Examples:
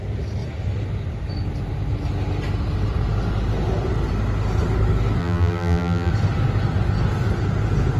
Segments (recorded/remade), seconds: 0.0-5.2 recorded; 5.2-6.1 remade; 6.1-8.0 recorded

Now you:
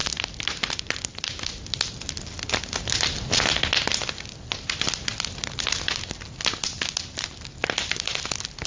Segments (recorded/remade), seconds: 0.0-8.7 recorded

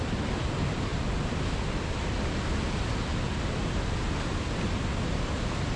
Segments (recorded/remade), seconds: 0.0-5.8 recorded

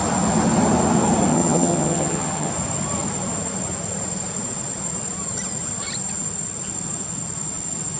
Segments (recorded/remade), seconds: 0.0-1.3 recorded; 1.3-2.5 remade; 2.5-8.0 recorded